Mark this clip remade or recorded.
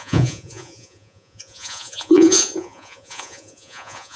remade